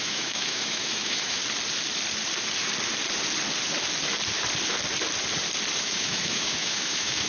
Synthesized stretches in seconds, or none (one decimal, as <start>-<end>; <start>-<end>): 0.0-1.4; 5.8-7.3